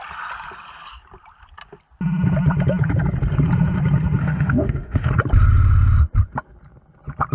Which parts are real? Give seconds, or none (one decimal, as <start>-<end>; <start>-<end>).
0.0-4.2; 5.1-7.3